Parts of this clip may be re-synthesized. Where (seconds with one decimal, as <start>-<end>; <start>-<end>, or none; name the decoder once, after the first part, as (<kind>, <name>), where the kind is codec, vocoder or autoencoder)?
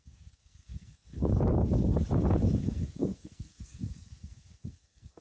0.0-1.3 (codec, SNAC); 2.6-5.2